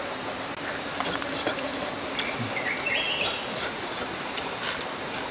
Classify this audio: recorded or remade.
recorded